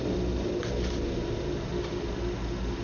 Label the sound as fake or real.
real